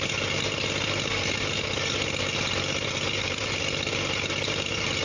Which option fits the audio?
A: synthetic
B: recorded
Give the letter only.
B